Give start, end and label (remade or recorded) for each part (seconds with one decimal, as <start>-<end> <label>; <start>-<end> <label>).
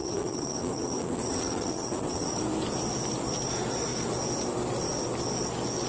0.0-2.4 remade; 2.4-5.9 recorded